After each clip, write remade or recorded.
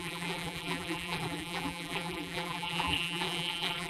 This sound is remade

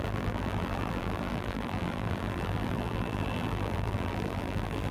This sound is remade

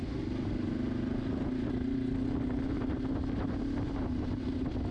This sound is recorded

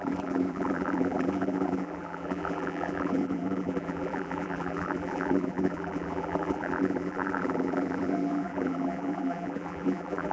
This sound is remade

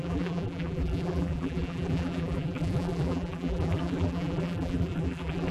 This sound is remade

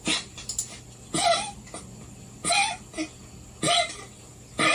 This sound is recorded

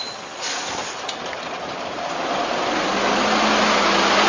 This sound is recorded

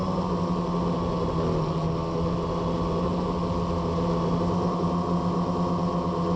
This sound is recorded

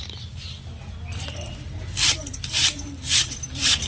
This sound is remade